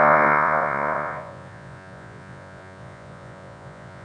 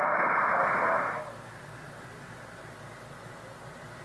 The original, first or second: second